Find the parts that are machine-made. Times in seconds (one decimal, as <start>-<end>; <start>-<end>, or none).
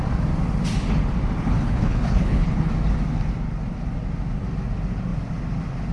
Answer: 1.4-2.7